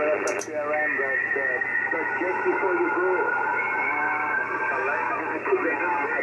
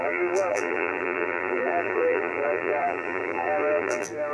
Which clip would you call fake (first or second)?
second